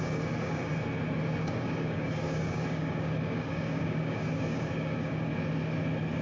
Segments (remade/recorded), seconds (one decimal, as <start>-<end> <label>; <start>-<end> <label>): 0.0-0.7 remade; 0.7-1.4 recorded; 1.4-5.3 remade; 5.3-6.2 recorded